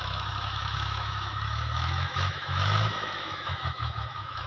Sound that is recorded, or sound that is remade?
remade